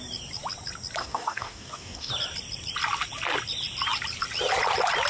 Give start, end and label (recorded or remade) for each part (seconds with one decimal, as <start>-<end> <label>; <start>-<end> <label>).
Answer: 0.0-1.0 recorded; 1.0-2.1 remade; 2.1-5.1 recorded